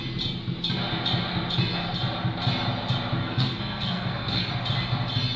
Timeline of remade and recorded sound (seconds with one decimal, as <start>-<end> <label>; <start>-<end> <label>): 0.0-3.2 recorded; 3.2-4.5 remade; 4.5-5.4 recorded